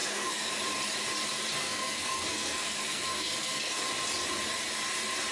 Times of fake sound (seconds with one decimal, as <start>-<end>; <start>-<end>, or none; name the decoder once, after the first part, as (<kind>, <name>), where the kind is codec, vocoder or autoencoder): 0.0-0.5 (codec, SNAC); 1.6-3.8